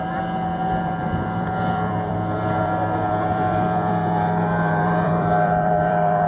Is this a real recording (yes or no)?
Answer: no